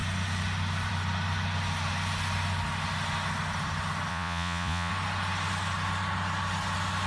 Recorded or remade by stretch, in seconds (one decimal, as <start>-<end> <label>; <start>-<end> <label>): 0.0-4.1 recorded; 4.1-4.9 remade; 4.9-7.1 recorded